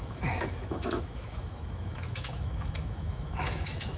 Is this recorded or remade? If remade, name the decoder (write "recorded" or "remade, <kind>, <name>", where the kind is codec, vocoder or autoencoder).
remade, autoencoder, DAC-VAE